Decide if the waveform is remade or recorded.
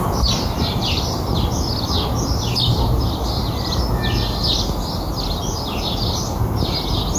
recorded